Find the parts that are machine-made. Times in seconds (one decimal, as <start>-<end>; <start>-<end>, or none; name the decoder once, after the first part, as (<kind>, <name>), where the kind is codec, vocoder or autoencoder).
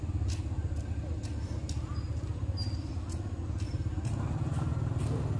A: none